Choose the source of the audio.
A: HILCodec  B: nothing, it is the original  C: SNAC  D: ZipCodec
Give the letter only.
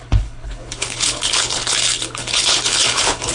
A